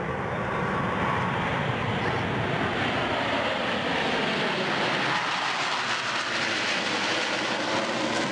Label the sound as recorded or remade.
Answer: recorded